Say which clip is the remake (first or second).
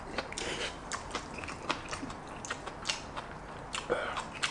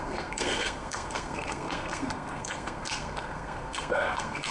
second